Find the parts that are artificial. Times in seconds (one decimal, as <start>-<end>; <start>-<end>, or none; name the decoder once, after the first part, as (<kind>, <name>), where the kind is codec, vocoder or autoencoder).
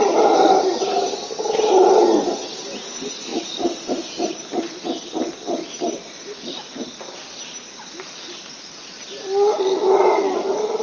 3.3-3.9 (vocoder, BigVGAN v2)